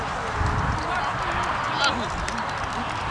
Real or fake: real